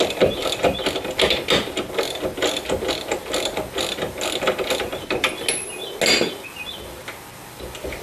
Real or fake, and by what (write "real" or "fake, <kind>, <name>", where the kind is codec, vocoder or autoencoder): real